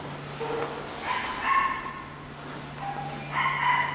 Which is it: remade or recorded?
recorded